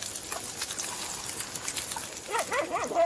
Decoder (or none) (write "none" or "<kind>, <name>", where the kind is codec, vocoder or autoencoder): none